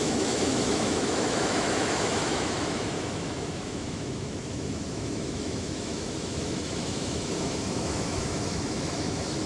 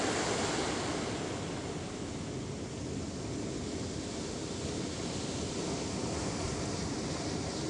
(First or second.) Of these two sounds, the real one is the second